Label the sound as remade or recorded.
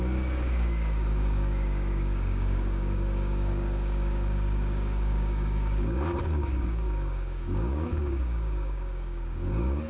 remade